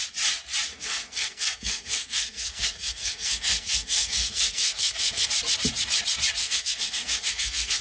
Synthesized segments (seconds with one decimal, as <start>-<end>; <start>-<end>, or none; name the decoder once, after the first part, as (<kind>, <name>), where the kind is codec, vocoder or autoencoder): 0.7-5.3 (codec, SNAC); 6.4-7.8